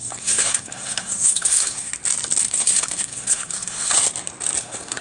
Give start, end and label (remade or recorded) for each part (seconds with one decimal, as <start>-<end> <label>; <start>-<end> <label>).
0.0-1.9 remade; 1.9-2.5 recorded; 2.5-3.9 remade; 3.9-4.6 recorded; 4.6-5.0 remade